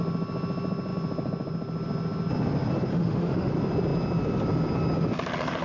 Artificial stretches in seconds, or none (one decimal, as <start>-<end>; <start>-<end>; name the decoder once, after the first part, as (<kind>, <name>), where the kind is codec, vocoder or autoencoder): 2.9-3.5 (autoencoder, DAC-VAE)